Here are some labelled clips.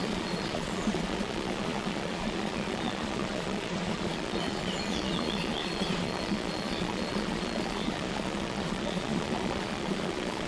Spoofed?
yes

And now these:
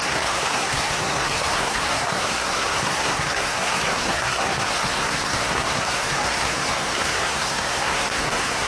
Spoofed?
yes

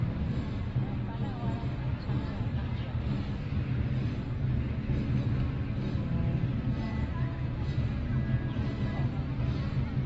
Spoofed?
no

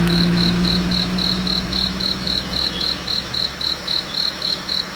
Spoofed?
yes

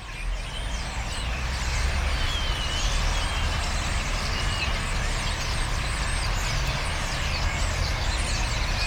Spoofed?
no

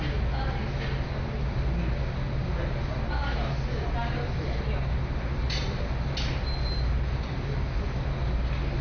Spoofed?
no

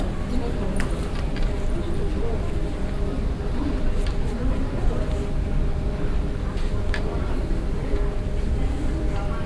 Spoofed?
no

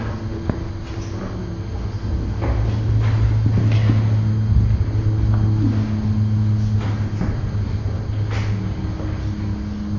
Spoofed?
no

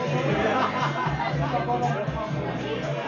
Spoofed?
no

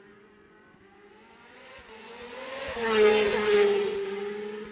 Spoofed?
yes